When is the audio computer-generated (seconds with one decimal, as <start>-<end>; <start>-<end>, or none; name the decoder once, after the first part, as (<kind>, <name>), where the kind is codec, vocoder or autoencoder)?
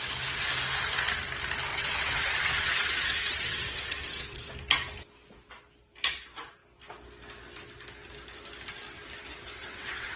1.7-4.5 (vocoder, WaveNeXt); 9.6-10.2